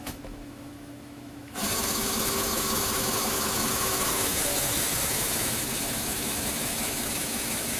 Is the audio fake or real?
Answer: fake